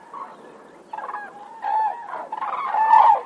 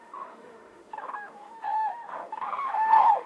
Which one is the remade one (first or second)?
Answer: second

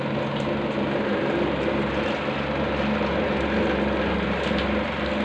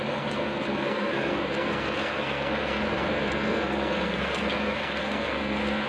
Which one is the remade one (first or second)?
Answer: second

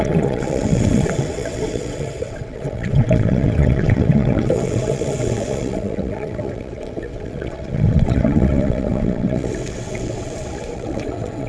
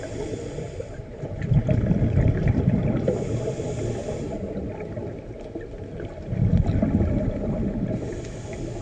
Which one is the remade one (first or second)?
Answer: first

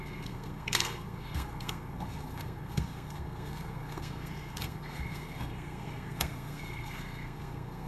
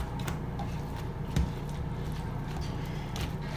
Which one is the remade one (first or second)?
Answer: first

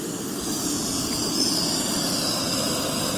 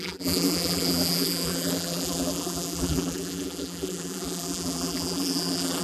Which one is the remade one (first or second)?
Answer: second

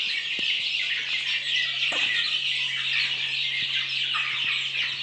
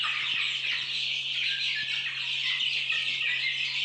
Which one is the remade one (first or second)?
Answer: second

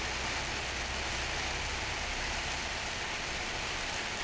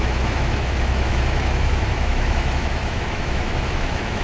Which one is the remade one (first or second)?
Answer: second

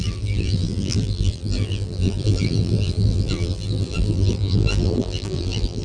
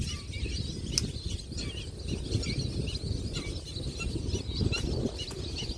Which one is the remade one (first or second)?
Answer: first